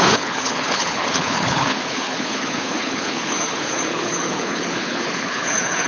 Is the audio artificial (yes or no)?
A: yes